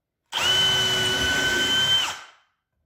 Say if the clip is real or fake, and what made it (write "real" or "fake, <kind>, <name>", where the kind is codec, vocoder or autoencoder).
real